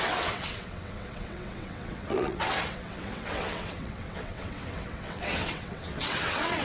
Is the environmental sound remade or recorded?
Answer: remade